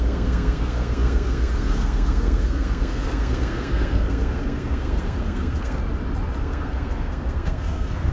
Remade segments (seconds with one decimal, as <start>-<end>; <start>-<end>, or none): 0.0-5.8; 6.4-8.1